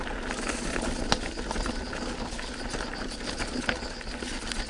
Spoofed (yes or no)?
no